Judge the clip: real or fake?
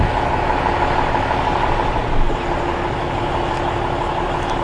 real